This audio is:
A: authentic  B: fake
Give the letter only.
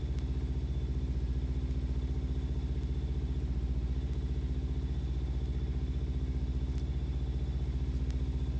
A